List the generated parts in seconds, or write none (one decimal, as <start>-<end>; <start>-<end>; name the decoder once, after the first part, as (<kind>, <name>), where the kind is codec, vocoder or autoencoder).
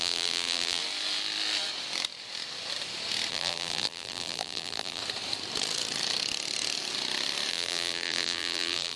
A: 0.0-0.8 (vocoder, BigVGAN v2); 3.3-5.0; 7.5-9.0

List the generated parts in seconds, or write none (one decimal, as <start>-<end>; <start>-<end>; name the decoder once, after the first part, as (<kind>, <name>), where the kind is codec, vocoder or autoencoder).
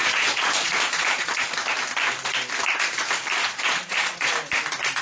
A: 0.0-1.4 (vocoder, Vocos); 3.4-4.3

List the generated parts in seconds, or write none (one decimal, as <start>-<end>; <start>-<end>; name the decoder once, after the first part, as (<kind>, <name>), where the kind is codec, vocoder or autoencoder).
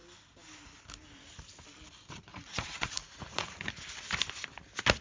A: 2.3-3.7 (vocoder, Vocos)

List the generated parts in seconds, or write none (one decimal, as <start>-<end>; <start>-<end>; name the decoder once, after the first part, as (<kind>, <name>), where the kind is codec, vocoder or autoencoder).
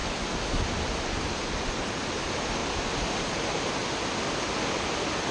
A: 1.7-2.6 (vocoder, BigVGAN v2); 3.2-3.8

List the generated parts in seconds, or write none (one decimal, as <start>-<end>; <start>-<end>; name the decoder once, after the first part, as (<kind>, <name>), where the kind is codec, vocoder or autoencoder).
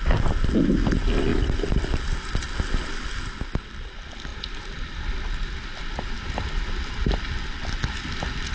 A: none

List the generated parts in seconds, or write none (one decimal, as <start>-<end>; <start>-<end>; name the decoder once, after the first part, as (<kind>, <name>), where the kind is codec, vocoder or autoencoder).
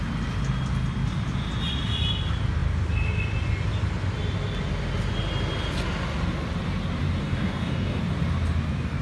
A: 7.2-8.0 (codec, DAC)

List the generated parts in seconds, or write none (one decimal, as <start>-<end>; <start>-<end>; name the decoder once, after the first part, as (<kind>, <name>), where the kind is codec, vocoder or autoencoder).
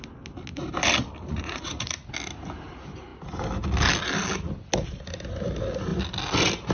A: 1.3-2.1 (vocoder, Vocos)